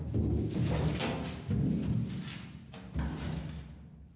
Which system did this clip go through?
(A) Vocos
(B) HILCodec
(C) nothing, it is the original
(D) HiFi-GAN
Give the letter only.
C